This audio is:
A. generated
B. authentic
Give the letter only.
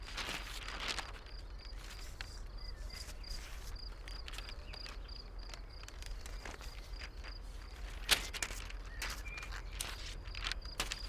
B